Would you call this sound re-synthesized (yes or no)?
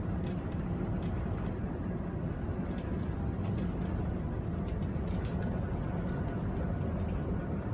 no